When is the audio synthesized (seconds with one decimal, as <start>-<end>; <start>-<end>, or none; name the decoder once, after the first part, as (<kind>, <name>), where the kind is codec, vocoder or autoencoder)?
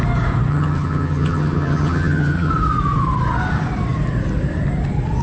0.5-2.5 (vocoder, HiFi-GAN)